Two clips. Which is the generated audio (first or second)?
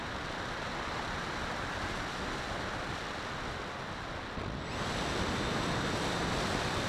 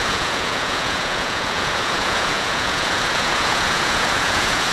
second